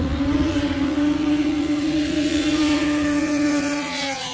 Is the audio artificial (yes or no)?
yes